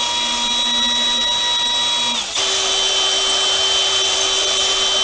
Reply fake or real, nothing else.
real